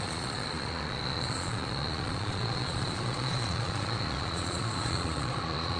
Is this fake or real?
fake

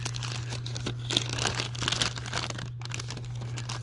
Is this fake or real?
real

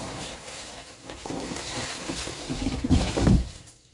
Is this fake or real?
fake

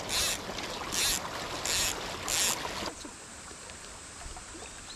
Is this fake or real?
real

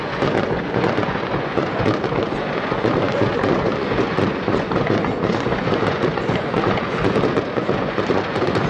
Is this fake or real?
fake